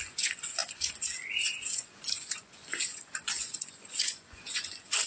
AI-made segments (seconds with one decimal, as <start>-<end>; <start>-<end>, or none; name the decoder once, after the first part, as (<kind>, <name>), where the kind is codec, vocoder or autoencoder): 0.0-5.1 (vocoder, Vocos)

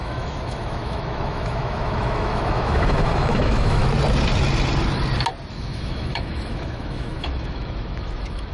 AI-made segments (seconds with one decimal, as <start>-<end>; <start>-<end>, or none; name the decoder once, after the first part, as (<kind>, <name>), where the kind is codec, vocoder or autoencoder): 0.0-3.8 (autoencoder, DAC-VAE); 5.5-8.5

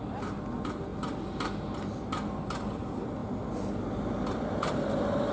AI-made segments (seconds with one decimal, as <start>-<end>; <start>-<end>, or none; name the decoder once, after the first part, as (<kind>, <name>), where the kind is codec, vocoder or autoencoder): none

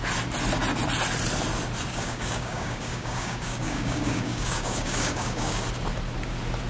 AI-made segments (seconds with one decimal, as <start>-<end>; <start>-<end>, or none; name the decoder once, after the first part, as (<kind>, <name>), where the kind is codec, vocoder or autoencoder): 1.9-5.6 (codec, DAC)

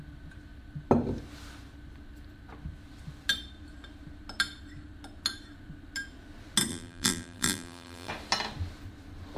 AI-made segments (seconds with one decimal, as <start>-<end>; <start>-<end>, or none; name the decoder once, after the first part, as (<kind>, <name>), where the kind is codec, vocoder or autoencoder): 6.7-8.1 (vocoder, BigVGAN v2)

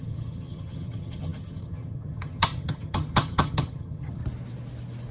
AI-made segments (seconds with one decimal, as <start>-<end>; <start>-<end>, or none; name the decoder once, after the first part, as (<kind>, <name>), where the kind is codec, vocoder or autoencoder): 0.0-4.2 (vocoder, HiFi-GAN)

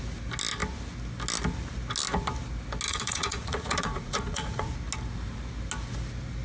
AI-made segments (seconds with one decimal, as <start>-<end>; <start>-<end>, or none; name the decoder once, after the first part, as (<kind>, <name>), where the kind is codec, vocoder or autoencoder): 2.9-4.7 (vocoder, Vocos)